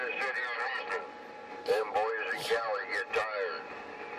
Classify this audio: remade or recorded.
recorded